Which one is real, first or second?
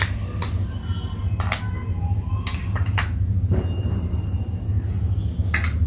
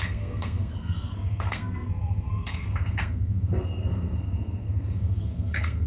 first